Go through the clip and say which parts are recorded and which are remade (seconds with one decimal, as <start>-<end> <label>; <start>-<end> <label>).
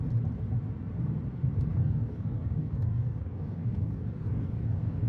0.0-1.7 recorded; 1.7-5.1 remade